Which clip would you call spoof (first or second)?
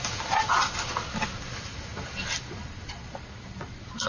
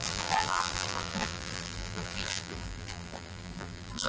second